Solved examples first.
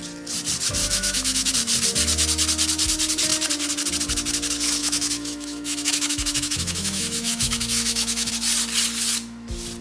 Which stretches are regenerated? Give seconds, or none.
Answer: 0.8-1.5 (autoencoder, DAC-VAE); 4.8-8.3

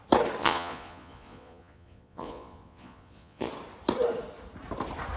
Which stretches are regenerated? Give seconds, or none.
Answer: 0.4-3.5 (vocoder, Vocos)

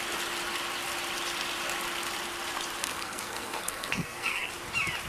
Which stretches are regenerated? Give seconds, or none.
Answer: 2.8-4.5 (codec, SNAC)

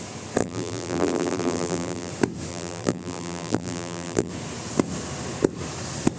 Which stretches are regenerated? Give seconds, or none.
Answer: 0.4-2.1 (vocoder, BigVGAN v2); 2.5-4.3

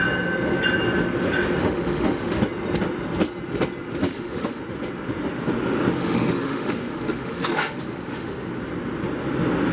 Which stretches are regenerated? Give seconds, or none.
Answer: 1.6-2.4 (autoencoder, DAC-VAE); 4.0-4.6; 6.0-8.5

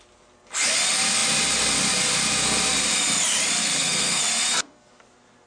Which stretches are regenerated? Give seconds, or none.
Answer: 3.6-4.2 (codec, SNAC)